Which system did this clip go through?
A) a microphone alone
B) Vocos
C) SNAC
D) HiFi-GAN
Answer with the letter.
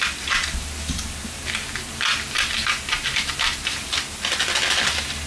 A